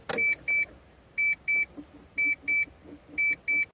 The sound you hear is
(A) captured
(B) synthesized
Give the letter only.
A